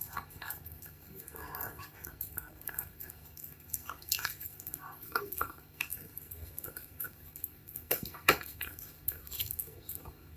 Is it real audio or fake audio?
fake